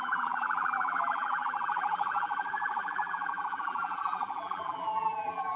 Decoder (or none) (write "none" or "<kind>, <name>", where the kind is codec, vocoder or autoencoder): vocoder, BigVGAN v2